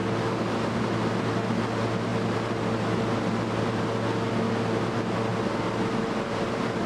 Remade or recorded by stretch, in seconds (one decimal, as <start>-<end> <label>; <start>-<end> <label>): 0.0-6.9 recorded